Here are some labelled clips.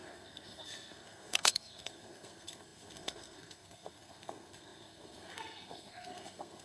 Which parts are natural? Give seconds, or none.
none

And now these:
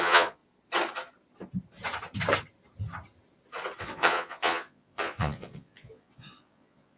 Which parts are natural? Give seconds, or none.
0.4-3.8

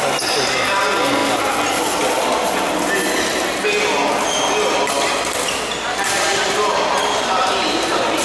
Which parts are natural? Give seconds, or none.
0.0-6.9